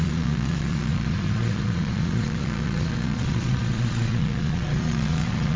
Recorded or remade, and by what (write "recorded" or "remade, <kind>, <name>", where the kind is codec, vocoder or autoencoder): remade, vocoder, Vocos